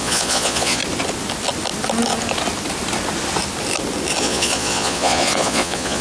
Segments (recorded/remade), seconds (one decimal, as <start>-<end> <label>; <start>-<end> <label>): 0.0-0.8 remade; 0.8-4.2 recorded; 4.2-6.0 remade